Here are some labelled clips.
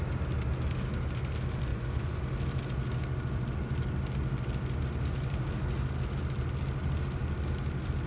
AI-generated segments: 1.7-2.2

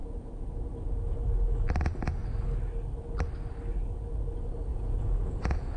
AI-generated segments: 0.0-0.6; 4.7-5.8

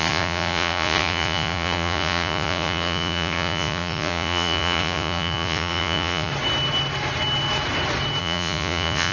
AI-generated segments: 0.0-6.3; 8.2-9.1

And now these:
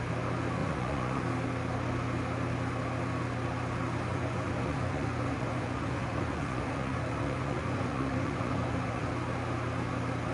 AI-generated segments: 0.6-1.2; 4.1-9.1

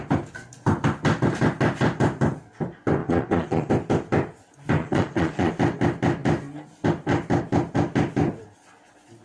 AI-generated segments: 3.0-3.7; 4.8-5.5

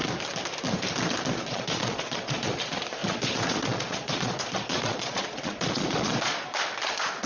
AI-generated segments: 1.3-6.5

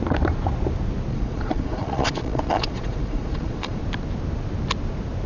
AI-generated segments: 1.1-3.8

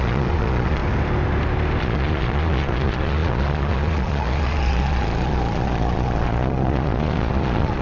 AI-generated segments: 0.0-0.8; 1.8-7.8